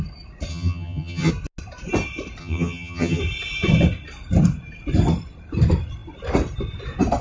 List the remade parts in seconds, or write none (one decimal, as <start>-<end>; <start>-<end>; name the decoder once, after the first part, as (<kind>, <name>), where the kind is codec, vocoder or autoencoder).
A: 0.5-1.3 (vocoder, HiFi-GAN); 2.4-3.2